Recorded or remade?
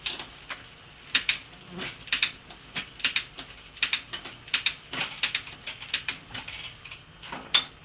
recorded